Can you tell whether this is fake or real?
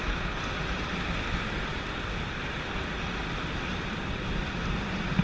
real